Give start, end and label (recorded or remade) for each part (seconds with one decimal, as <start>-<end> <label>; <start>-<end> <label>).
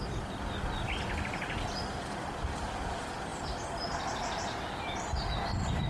0.0-5.9 recorded